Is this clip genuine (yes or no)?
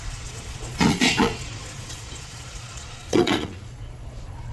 no